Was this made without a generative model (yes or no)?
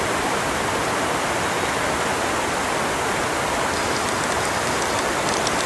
yes